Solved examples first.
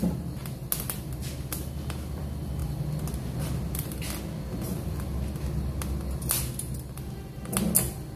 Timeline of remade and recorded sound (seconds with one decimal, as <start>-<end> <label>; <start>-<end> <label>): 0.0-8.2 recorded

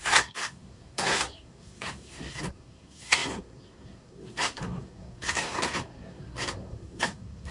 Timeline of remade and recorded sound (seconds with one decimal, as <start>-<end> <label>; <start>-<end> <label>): 0.0-7.5 remade

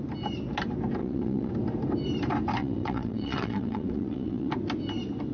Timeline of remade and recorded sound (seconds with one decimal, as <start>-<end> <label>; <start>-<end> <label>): 0.0-1.0 recorded; 1.0-1.5 remade; 1.5-2.6 recorded; 2.6-4.5 remade; 4.5-5.3 recorded

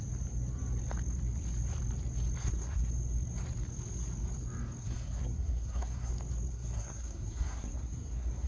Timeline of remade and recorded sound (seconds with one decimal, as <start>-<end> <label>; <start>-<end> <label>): 0.0-2.4 recorded; 2.4-2.9 remade; 2.9-4.8 recorded; 4.8-6.1 remade; 6.1-6.5 recorded; 6.5-8.5 remade

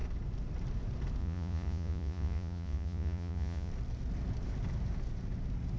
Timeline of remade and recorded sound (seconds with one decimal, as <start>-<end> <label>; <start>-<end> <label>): 0.0-1.2 recorded; 1.2-3.7 remade; 3.7-5.8 recorded

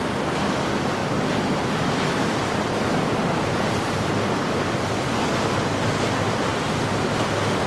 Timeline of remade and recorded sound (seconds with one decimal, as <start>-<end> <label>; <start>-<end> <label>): 0.0-1.0 recorded; 1.0-5.6 remade; 5.6-7.7 recorded

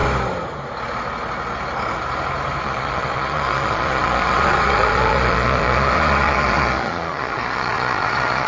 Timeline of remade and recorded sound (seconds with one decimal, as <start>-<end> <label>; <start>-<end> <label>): 0.0-2.6 recorded; 2.6-8.5 remade